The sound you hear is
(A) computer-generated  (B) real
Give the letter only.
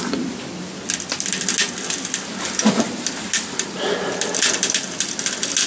B